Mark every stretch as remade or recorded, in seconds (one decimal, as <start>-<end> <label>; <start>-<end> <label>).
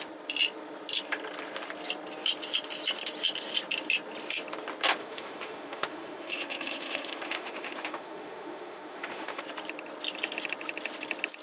0.0-5.0 recorded; 5.0-9.4 remade; 9.4-11.4 recorded